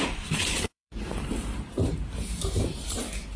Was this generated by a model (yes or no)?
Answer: yes